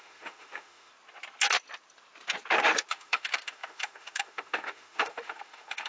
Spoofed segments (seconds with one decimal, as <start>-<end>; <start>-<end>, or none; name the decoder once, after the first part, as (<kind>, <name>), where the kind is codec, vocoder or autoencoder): 0.0-0.9 (autoencoder, DAC-VAE); 2.9-5.9

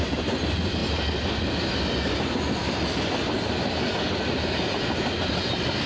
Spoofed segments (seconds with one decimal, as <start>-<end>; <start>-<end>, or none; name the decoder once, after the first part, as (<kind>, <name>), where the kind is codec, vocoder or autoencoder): none

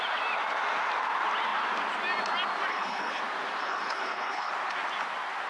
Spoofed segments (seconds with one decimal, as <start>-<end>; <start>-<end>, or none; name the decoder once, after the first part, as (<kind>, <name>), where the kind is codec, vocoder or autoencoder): 2.7-3.2 (codec, HILCodec); 3.6-4.5

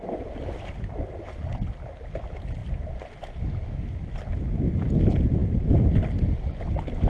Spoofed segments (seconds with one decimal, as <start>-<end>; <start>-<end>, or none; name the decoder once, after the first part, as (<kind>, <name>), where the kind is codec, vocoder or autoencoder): none

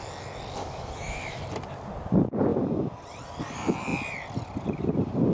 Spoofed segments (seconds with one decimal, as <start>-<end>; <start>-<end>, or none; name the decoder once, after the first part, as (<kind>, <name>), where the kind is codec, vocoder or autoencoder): 0.6-1.4 (autoencoder, DAC-VAE)

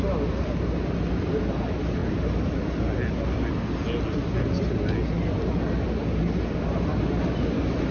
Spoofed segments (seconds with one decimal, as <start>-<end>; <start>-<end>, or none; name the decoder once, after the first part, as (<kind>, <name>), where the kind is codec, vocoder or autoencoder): none

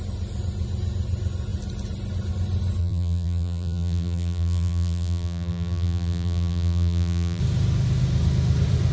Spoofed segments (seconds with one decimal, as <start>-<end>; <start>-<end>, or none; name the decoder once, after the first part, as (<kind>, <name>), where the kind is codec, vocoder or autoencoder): 2.8-7.4 (vocoder, BigVGAN v2)